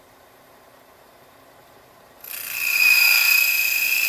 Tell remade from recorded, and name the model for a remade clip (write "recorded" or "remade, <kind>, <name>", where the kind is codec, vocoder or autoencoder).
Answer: remade, vocoder, BigVGAN v2